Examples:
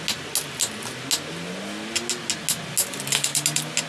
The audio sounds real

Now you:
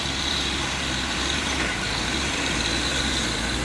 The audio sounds fake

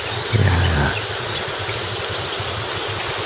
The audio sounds real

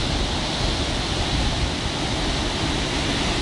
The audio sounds real